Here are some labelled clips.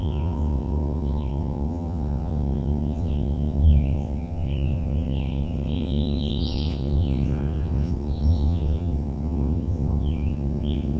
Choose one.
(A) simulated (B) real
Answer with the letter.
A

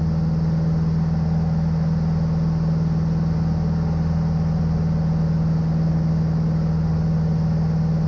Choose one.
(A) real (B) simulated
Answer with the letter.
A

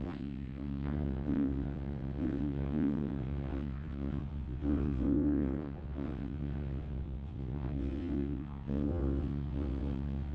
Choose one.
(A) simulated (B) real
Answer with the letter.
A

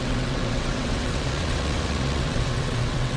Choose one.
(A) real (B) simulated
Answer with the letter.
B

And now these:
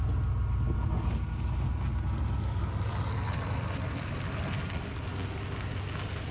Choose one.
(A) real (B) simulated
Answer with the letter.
A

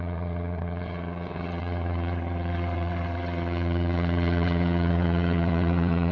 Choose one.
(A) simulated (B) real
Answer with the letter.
A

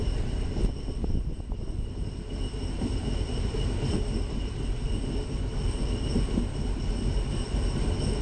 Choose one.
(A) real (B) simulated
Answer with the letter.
A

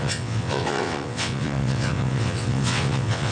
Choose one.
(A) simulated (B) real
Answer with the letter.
A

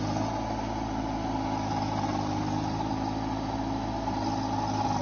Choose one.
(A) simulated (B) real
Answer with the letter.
B